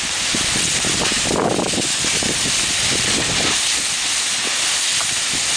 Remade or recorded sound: recorded